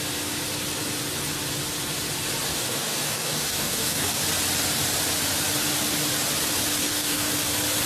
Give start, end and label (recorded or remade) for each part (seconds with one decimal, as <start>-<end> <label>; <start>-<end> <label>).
0.0-2.5 recorded; 2.5-4.2 remade; 4.2-6.8 recorded; 6.8-7.3 remade; 7.3-7.9 recorded